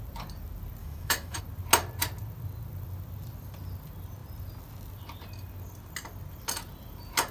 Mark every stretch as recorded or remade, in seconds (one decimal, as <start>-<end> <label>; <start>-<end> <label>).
0.0-0.8 recorded; 0.8-1.4 remade; 1.4-7.3 recorded

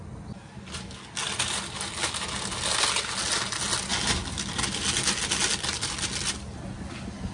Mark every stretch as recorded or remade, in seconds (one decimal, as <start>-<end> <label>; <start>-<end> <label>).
0.0-7.3 recorded

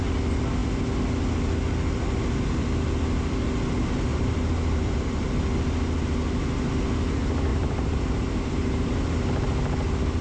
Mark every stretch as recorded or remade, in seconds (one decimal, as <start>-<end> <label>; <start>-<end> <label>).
0.0-4.1 recorded; 4.1-5.4 remade; 5.4-7.5 recorded; 7.5-8.9 remade; 8.9-10.2 recorded

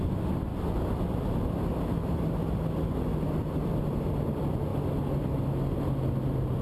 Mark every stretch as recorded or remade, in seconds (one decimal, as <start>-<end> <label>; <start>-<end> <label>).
0.0-0.5 remade; 0.5-3.2 recorded; 3.2-4.7 remade; 4.7-5.8 recorded; 5.8-6.6 remade

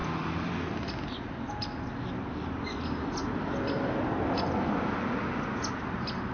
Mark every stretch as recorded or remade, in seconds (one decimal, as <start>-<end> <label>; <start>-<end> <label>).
0.0-6.3 recorded

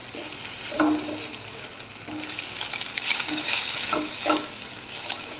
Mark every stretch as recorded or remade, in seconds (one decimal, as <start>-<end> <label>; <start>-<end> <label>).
0.0-2.9 recorded; 2.9-5.4 remade

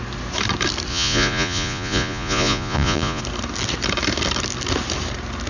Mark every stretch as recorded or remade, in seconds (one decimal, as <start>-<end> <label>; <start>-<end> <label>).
0.0-0.9 recorded; 0.9-3.2 remade; 3.2-5.5 recorded

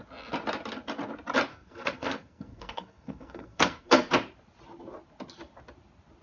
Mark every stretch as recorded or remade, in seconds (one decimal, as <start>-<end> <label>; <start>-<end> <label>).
0.0-1.5 recorded; 1.5-4.1 remade; 4.1-6.2 recorded